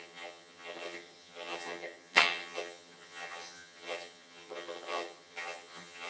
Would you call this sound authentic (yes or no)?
no